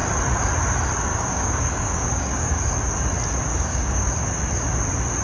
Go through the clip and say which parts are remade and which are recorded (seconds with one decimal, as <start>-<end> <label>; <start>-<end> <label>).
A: 0.0-1.1 recorded; 1.1-2.6 remade; 2.6-3.5 recorded; 3.5-4.1 remade; 4.1-5.2 recorded